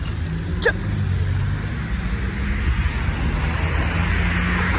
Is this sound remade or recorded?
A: recorded